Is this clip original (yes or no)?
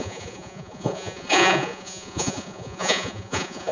no